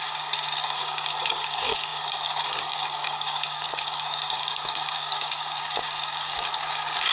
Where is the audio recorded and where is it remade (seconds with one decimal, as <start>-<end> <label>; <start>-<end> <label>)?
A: 0.0-7.1 remade